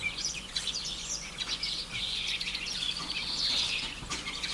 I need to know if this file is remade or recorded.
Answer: remade